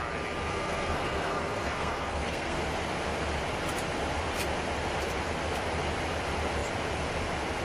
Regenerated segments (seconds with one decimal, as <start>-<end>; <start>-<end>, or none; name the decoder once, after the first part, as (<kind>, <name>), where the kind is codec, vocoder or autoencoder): 0.5-2.6 (codec, SNAC)